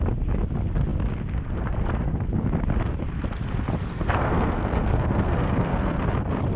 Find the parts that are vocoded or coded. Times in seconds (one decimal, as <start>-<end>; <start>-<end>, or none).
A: 3.9-6.0